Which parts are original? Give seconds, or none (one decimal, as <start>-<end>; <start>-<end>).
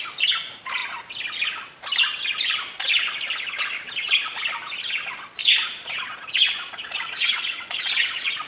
0.0-5.4